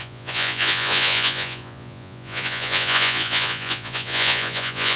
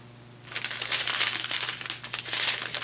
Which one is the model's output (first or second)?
first